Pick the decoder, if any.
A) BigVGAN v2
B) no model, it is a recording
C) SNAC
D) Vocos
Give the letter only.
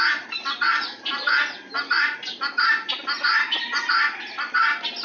B